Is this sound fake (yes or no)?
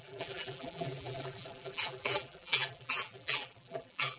yes